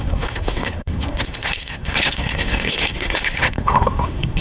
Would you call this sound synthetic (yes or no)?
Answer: yes